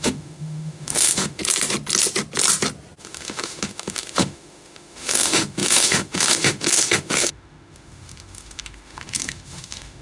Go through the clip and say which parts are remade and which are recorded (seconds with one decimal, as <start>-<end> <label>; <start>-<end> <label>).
0.0-1.4 remade; 1.4-3.0 recorded; 3.0-10.0 remade